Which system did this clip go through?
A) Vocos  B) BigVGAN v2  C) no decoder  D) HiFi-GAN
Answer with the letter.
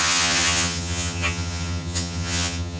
D